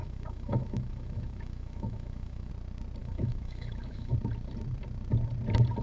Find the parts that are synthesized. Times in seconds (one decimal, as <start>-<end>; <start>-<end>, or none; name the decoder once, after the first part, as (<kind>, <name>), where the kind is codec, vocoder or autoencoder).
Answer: 0.0-2.5 (autoencoder, DAC-VAE); 3.0-4.1